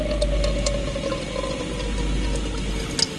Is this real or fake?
real